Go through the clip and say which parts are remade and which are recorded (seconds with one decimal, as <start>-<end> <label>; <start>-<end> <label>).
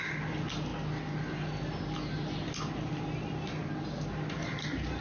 0.0-5.0 recorded